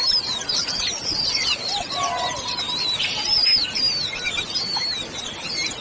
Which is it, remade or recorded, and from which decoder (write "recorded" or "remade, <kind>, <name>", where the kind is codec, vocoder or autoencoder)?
recorded